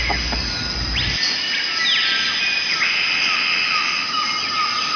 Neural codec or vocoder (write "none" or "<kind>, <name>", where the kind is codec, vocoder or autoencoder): none